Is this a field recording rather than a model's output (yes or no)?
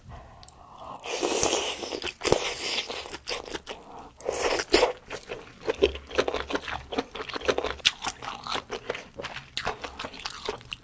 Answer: yes